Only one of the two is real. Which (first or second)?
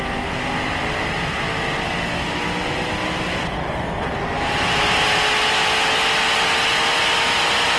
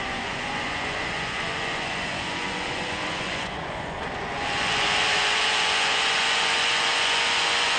first